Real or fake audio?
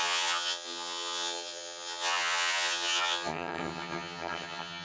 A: fake